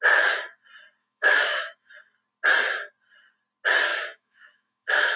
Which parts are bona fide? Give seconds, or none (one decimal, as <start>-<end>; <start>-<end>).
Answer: 0.0-1.0; 1.9-3.9